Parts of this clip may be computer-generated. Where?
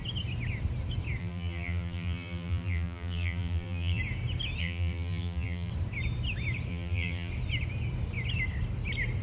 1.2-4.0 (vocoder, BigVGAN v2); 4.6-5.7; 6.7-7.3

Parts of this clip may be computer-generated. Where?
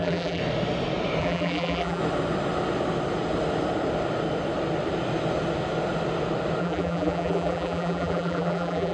0.0-0.4 (vocoder, BigVGAN v2); 1.2-2.0; 6.6-8.9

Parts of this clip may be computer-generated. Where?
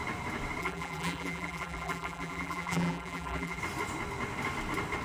0.6-3.6 (vocoder, BigVGAN v2)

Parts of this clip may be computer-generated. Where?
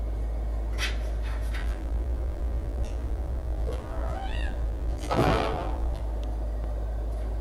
1.6-6.0 (vocoder, BigVGAN v2)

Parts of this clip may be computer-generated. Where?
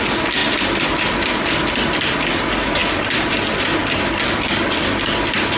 none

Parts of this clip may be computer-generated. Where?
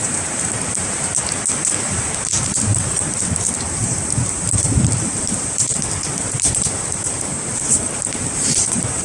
0.0-1.1 (vocoder, BigVGAN v2); 1.8-9.0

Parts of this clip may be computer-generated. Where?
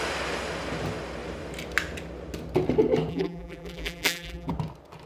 3.1-4.5 (vocoder, BigVGAN v2)